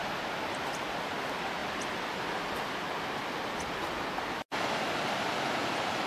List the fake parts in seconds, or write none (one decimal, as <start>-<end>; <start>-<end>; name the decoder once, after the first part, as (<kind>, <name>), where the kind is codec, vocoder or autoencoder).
none